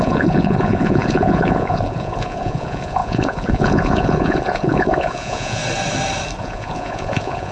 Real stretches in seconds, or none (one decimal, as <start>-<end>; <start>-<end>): 5.6-6.4